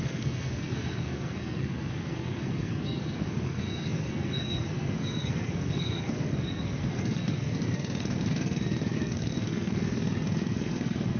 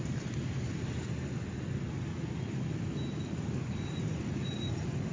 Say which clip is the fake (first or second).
first